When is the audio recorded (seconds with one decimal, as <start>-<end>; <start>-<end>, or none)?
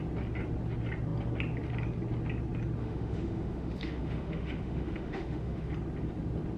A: 0.0-2.8; 5.7-6.6